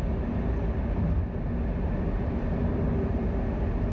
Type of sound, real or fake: real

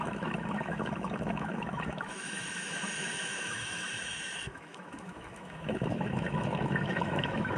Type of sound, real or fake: fake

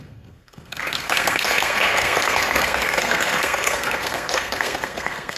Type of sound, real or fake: fake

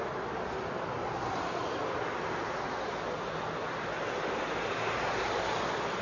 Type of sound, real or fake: real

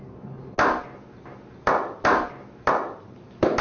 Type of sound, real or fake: real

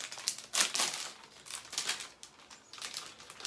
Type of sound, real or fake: real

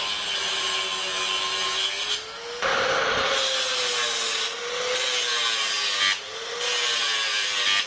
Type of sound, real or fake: real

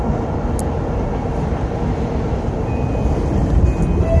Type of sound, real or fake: real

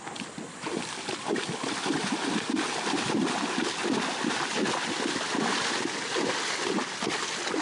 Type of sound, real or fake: real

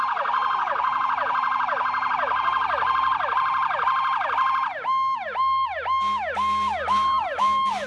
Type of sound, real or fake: real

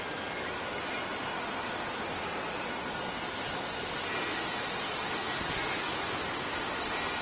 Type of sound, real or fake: real